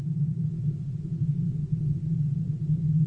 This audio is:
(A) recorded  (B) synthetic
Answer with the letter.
A